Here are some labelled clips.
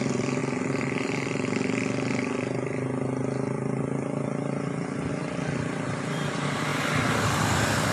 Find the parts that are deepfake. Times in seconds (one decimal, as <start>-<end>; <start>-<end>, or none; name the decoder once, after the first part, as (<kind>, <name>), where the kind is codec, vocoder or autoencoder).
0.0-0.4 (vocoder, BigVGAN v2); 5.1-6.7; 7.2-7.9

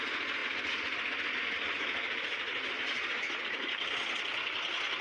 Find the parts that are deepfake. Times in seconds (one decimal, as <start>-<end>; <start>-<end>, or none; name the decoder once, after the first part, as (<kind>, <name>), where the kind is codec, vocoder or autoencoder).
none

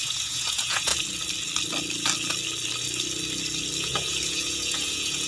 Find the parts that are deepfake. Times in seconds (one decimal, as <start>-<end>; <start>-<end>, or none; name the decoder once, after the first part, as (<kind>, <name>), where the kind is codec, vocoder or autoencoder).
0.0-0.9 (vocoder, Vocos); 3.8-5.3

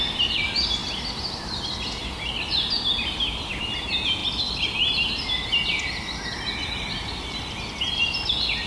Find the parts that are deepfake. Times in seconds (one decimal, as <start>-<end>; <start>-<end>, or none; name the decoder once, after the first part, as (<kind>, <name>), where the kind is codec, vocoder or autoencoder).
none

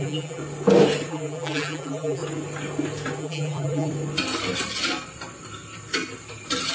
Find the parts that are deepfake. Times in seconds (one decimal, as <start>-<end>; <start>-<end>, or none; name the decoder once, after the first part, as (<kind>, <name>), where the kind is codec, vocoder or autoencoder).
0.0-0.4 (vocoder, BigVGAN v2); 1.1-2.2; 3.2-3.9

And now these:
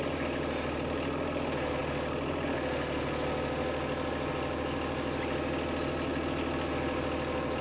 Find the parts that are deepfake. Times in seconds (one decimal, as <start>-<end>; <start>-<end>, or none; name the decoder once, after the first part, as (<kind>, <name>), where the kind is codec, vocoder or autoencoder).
none

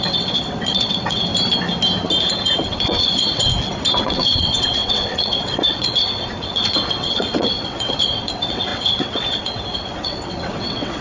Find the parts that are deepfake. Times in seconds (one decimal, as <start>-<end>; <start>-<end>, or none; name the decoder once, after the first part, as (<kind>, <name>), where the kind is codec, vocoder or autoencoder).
0.0-1.3 (vocoder, WaveNeXt); 2.3-3.5; 4.0-11.0